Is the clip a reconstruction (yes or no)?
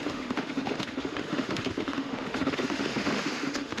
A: yes